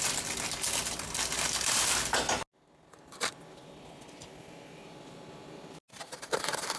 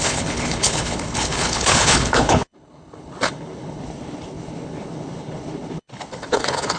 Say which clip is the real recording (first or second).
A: first